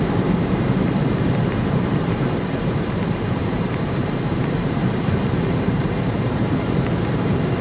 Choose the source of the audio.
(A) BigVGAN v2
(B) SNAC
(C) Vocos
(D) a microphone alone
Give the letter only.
A